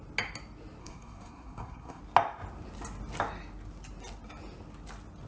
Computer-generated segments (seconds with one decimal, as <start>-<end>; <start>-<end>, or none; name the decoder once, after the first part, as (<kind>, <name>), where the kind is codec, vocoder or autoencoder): 0.8-2.0 (codec, SNAC)